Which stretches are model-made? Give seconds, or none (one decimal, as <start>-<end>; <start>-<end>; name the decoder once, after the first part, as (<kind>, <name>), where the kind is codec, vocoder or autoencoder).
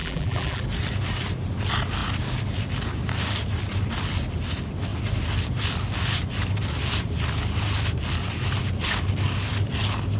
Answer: 0.0-0.6 (vocoder, BigVGAN v2)